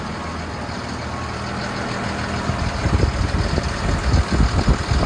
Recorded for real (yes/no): yes